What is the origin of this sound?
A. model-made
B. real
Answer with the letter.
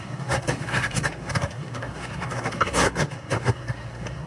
A